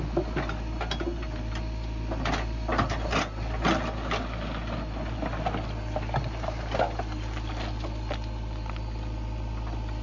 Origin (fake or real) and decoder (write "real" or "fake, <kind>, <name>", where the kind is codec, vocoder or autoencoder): real